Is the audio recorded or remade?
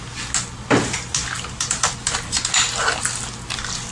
recorded